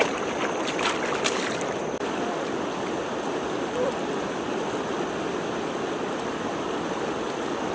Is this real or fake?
real